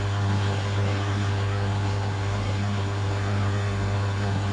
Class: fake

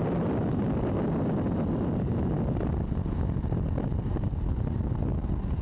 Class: real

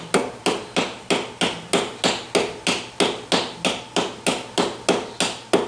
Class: real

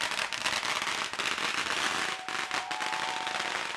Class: real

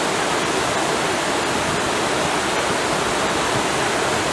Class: real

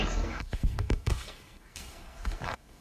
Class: fake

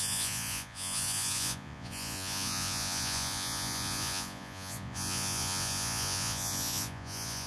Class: fake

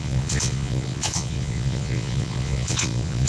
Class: fake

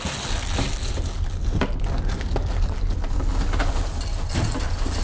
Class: real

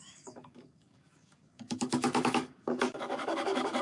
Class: fake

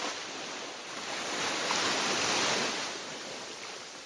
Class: real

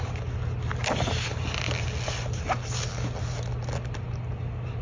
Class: real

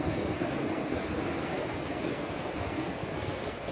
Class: fake